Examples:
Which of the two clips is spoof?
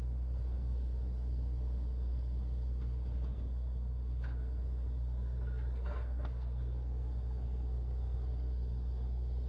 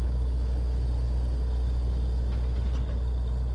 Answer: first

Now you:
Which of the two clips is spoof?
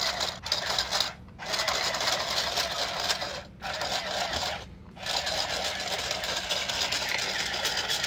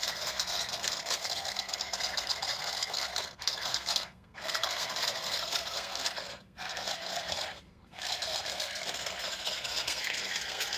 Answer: second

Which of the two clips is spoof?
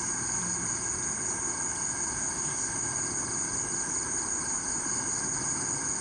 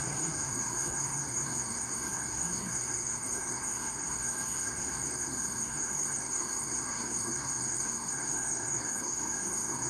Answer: second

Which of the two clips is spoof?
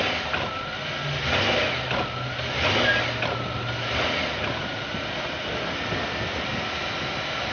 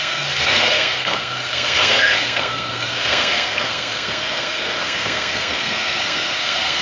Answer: second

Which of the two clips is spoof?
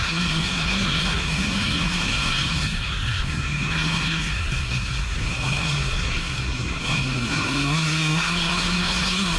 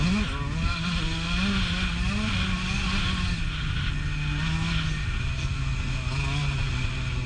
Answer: first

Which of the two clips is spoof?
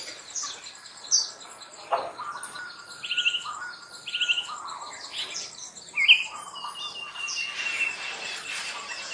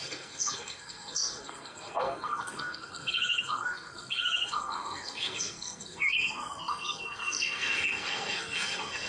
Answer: second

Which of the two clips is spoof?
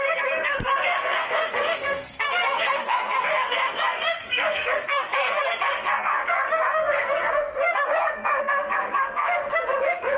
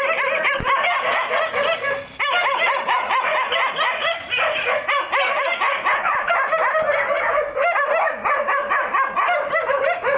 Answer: first